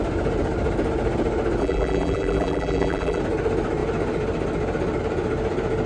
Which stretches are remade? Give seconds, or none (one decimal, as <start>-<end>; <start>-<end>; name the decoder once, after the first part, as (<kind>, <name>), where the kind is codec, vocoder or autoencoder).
1.6-3.2 (vocoder, BigVGAN v2)